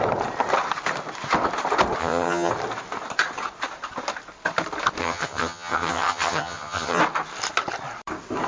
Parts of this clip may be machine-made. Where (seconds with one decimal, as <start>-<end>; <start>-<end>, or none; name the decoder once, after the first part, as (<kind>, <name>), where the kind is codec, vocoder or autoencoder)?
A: 2.0-2.5 (vocoder, HiFi-GAN); 5.0-7.0